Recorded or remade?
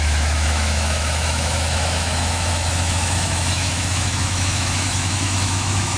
remade